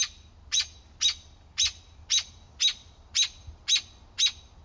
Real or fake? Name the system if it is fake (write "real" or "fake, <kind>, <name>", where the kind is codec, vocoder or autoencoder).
real